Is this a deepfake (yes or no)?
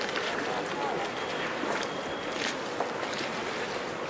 no